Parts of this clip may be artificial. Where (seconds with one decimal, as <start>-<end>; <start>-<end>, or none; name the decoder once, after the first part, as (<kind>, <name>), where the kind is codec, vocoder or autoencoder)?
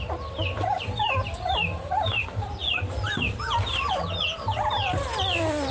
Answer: none